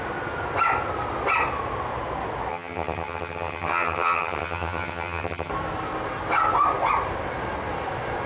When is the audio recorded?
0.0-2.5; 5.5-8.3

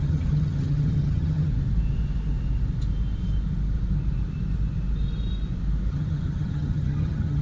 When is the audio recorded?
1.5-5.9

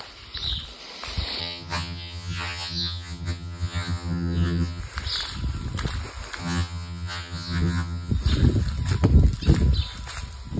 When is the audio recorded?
0.0-1.4; 4.8-6.4; 8.1-10.6

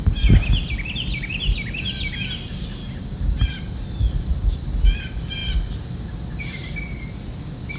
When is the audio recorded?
0.0-7.8